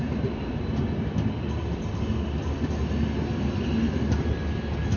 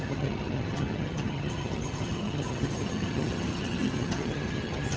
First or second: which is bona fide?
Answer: first